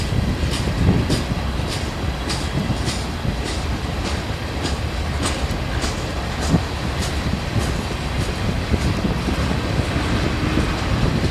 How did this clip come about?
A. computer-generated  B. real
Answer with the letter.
B